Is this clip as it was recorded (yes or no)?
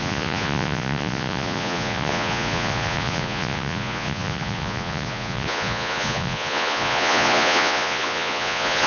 no